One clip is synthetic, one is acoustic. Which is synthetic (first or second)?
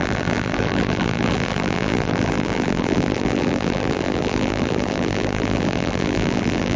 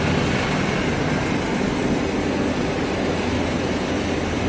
first